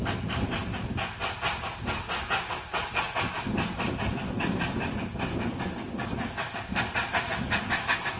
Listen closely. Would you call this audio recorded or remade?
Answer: recorded